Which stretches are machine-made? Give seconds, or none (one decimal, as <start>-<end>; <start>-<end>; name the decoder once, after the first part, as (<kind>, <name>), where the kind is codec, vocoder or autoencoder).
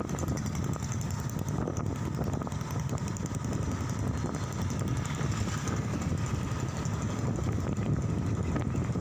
5.6-6.1 (codec, SNAC)